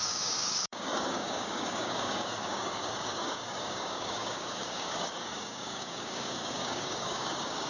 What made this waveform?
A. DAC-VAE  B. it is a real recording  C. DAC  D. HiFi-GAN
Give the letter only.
C